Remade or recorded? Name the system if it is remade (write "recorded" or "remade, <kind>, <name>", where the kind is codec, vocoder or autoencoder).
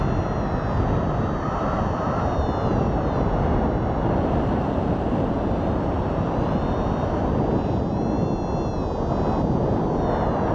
recorded